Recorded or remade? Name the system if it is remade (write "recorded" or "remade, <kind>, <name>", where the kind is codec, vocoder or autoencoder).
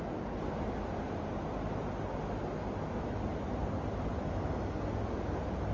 recorded